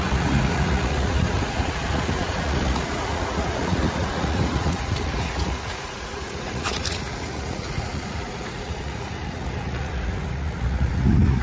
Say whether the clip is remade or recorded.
remade